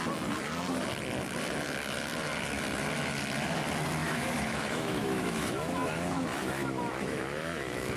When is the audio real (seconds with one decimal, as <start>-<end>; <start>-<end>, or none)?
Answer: 0.0-4.0